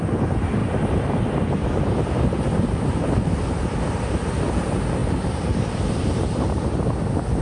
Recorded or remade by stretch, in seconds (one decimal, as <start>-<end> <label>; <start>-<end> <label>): 0.0-0.6 recorded; 0.6-4.4 remade; 4.4-5.0 recorded; 5.0-6.6 remade; 6.6-7.4 recorded